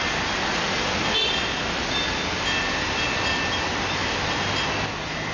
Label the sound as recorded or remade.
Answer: recorded